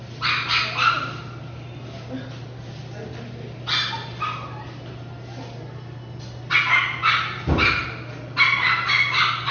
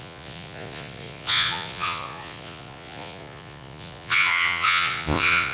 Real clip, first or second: first